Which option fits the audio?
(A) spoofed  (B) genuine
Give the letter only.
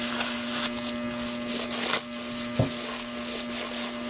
B